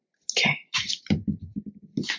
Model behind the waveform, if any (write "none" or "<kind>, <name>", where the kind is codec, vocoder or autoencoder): none